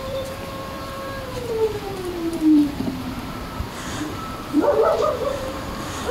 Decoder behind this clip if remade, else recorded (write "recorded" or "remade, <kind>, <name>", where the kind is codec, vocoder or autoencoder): remade, vocoder, BigVGAN v2